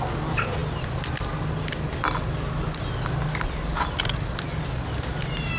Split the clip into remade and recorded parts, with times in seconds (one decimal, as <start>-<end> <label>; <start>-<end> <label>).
0.0-5.6 recorded